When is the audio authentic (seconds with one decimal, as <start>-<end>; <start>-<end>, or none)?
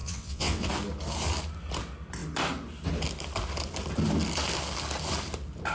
0.7-5.7